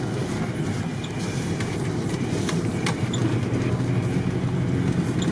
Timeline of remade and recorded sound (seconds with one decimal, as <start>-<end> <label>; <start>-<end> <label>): 0.0-5.3 recorded

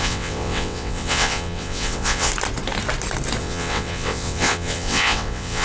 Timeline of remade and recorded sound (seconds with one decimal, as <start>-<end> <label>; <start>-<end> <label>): 0.0-2.3 remade; 2.3-3.4 recorded; 3.4-5.6 remade

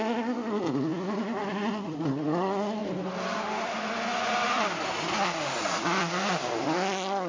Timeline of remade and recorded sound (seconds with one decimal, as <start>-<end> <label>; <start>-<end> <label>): 0.0-7.3 recorded

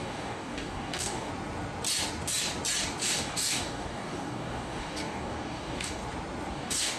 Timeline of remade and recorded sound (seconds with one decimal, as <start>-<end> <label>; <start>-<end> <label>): 0.0-1.3 remade; 1.3-3.0 recorded; 3.0-6.0 remade; 6.0-6.5 recorded; 6.5-7.0 remade